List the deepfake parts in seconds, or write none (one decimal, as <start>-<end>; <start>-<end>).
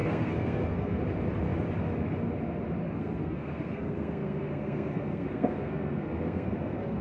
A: 0.0-1.0; 2.8-7.0